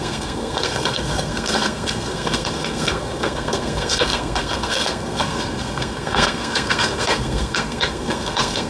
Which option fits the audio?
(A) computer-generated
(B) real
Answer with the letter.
A